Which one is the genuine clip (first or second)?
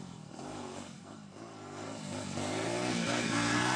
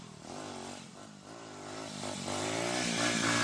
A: second